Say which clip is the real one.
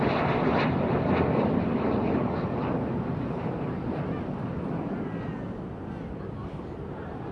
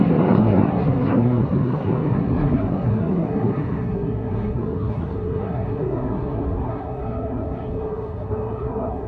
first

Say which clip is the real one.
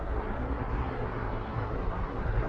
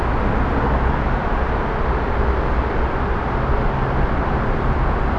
second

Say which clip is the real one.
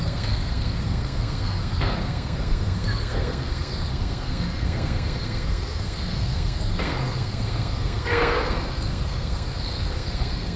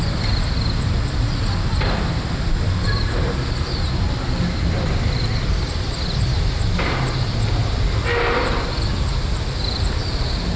second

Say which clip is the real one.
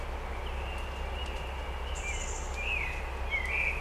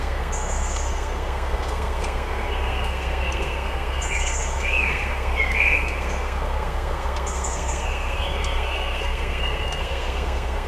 first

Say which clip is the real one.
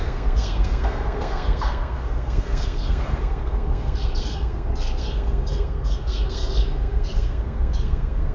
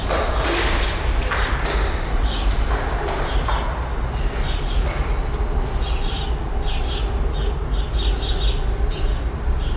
second